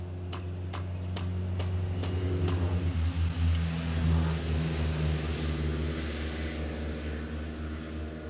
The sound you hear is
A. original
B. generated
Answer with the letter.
A